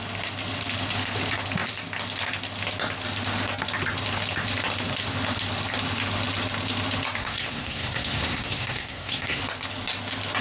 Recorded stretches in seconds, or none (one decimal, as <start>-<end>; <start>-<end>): 0.0-7.2; 9.4-10.4

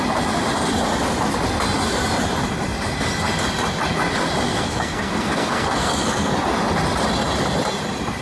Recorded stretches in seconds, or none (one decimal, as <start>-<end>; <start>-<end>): 0.0-4.5; 6.3-8.2